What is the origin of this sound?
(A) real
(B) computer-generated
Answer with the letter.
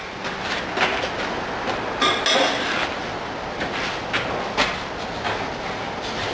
A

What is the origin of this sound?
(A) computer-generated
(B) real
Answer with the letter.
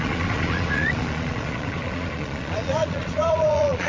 A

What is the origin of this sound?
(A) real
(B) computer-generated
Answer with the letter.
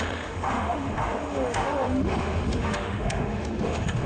B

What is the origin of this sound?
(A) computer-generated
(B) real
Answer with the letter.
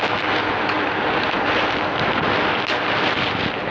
B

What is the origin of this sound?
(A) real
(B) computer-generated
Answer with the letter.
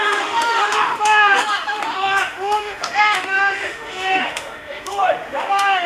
B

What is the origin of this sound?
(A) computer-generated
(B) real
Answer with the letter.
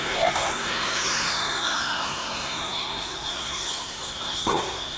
A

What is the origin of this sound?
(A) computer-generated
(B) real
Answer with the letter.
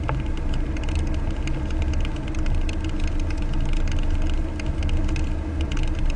B